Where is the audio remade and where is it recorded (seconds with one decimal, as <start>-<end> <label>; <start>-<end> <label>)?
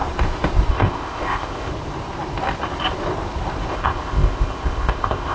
0.0-0.7 recorded; 0.7-1.7 remade; 1.7-3.7 recorded; 3.7-5.3 remade